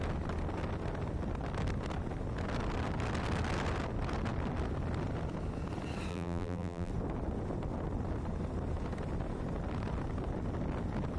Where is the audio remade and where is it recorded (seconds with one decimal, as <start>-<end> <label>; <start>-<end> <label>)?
0.0-6.1 recorded; 6.1-6.9 remade; 6.9-11.2 recorded